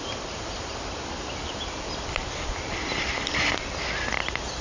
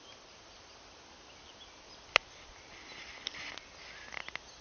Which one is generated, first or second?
first